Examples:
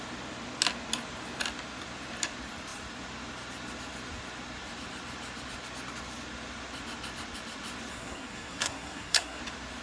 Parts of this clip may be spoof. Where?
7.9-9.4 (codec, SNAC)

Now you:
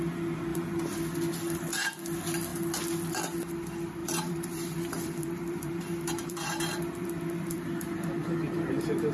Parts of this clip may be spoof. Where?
0.5-1.0 (vocoder, BigVGAN v2); 4.0-8.7

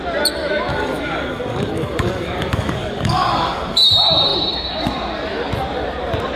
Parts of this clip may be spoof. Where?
0.7-3.9 (codec, DAC)

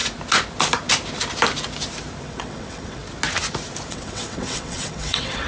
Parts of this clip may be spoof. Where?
2.2-3.0 (vocoder, WaveNeXt); 3.9-5.5

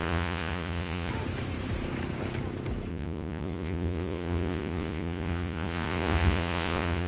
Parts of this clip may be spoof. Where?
0.0-1.1 (vocoder, Vocos); 2.9-7.1

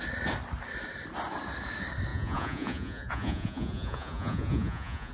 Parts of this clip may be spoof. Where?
2.1-5.1 (vocoder, Vocos)

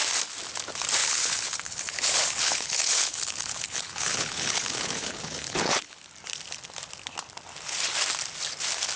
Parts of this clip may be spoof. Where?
1.0-6.0 (codec, HILCodec)

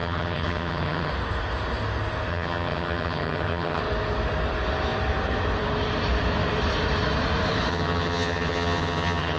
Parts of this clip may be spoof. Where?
0.0-1.1 (vocoder, HiFi-GAN); 2.3-3.8; 7.7-9.4